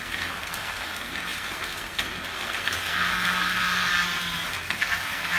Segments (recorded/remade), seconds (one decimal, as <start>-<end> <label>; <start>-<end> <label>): 0.0-3.9 remade; 3.9-4.5 recorded; 4.5-5.4 remade